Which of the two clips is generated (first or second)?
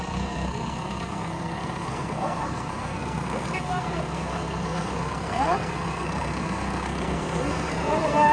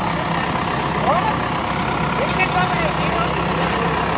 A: first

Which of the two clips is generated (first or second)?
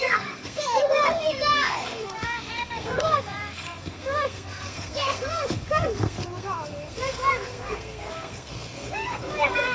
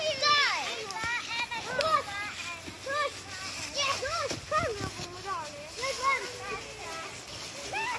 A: first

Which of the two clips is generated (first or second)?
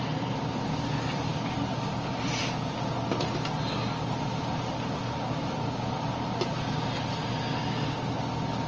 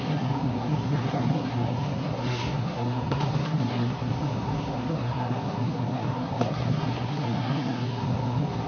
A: second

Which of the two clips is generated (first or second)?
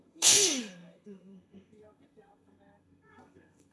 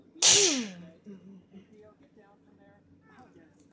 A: first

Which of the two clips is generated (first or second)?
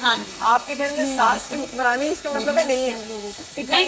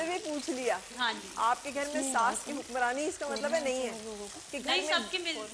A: first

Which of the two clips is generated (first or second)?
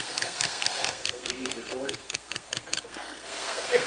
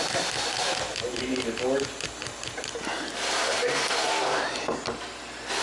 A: first